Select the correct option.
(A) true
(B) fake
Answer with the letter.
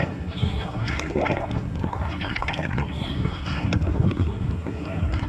B